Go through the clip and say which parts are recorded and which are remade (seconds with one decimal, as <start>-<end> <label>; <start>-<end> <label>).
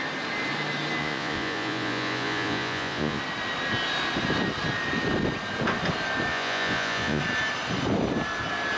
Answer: 0.0-1.0 recorded; 1.0-3.2 remade; 3.2-6.3 recorded; 6.3-7.2 remade; 7.2-8.8 recorded